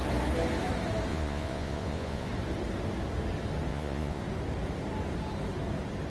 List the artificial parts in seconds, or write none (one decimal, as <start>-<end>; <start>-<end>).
1.1-2.3; 3.7-4.2